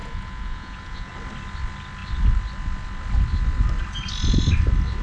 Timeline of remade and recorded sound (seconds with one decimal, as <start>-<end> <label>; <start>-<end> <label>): 0.0-1.1 remade; 1.1-5.0 recorded